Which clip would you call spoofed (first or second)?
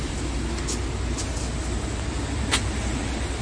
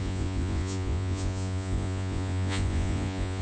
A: second